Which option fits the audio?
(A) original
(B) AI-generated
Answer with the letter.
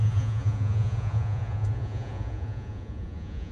B